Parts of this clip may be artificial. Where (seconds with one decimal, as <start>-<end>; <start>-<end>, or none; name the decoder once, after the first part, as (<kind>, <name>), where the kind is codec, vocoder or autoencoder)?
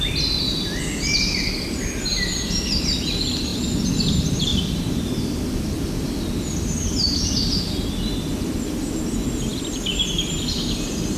4.5-8.5 (vocoder, BigVGAN v2); 9.5-10.3